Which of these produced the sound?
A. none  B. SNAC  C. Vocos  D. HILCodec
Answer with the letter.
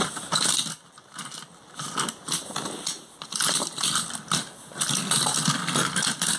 A